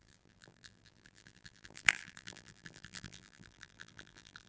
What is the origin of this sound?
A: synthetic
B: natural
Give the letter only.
A